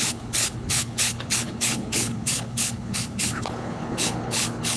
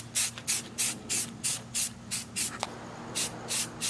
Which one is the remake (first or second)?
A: first